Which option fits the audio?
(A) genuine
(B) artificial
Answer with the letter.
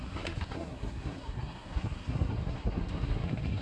B